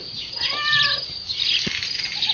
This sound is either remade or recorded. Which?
recorded